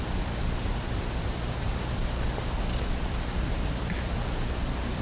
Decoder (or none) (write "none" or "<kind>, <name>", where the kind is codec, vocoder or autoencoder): none